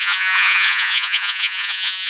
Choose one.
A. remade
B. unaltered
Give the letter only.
A